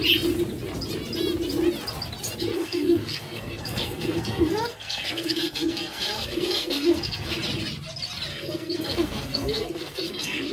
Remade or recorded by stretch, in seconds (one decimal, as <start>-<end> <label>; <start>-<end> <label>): 0.0-2.5 recorded; 2.5-7.4 remade; 7.4-8.3 recorded; 8.3-10.5 remade